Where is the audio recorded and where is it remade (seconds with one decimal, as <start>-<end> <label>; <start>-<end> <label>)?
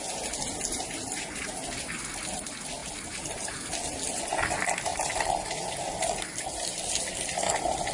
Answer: 0.0-7.9 recorded